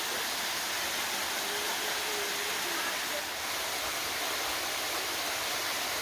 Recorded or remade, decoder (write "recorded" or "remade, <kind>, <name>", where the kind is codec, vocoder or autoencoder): recorded